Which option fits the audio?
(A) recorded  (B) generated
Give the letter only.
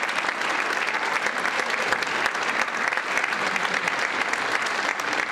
A